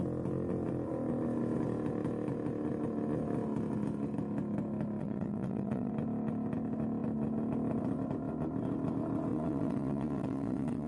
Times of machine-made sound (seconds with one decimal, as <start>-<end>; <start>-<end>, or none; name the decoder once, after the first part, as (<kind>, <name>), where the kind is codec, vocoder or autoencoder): 5.0-5.9 (vocoder, WaveNeXt); 9.3-10.9